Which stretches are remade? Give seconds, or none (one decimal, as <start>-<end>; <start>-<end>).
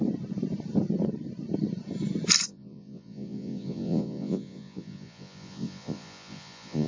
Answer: 2.5-6.9